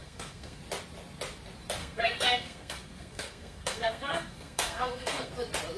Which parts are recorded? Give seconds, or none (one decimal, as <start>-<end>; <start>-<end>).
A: 0.6-1.8; 5.3-5.8